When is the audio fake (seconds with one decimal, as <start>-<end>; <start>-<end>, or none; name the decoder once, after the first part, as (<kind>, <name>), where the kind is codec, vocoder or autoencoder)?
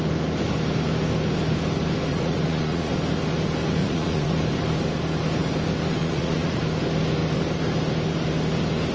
2.1-2.9 (vocoder, Vocos); 3.8-4.3; 6.0-6.6